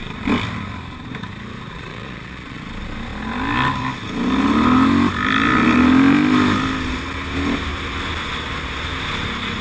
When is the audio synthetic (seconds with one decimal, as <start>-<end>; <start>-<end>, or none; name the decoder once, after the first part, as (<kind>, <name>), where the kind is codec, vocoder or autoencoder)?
1.7-2.6 (vocoder, Vocos)